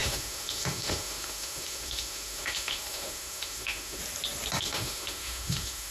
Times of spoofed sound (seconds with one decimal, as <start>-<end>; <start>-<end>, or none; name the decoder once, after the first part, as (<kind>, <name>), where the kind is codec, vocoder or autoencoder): 0.0-4.0 (autoencoder, DAC-VAE); 4.6-5.9